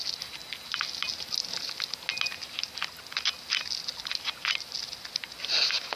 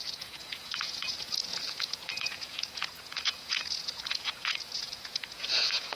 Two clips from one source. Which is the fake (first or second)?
second